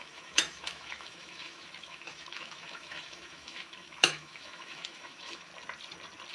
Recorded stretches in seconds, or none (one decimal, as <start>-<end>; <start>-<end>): 5.5-6.3